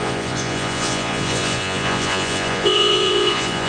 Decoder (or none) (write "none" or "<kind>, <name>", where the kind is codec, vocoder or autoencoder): vocoder, Vocos